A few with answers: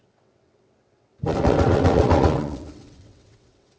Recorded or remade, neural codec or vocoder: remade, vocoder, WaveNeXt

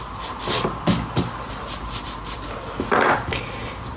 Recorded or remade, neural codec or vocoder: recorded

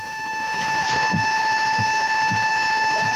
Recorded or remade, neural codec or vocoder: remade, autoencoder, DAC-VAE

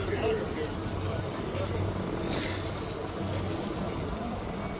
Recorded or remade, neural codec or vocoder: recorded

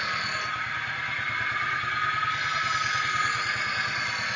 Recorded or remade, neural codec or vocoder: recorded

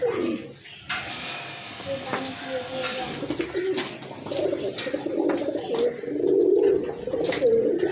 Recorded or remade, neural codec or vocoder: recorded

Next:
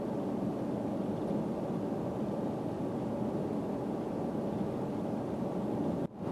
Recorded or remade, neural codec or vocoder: recorded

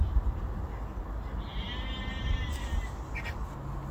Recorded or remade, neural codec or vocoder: recorded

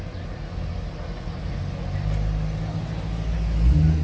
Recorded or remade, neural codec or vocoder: recorded